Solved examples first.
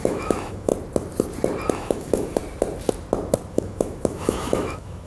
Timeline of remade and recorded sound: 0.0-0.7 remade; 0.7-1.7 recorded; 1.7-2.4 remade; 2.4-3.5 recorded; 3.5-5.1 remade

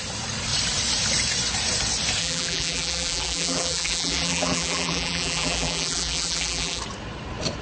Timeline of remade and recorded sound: 0.0-2.2 recorded; 2.2-6.8 remade; 6.8-7.6 recorded

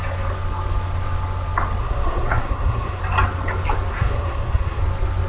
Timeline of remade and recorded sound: 0.0-1.8 recorded; 1.8-3.0 remade; 3.0-3.9 recorded; 3.9-4.8 remade; 4.8-5.3 recorded

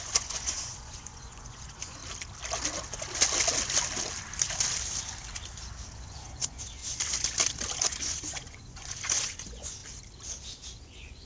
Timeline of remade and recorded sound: 0.0-2.0 remade; 2.0-5.9 recorded; 5.9-6.8 remade; 6.8-7.8 recorded; 7.8-9.8 remade; 9.8-10.8 recorded; 10.8-11.3 remade

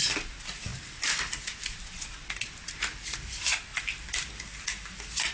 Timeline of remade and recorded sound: 0.0-5.3 recorded